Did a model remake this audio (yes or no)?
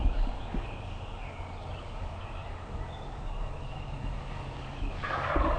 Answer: yes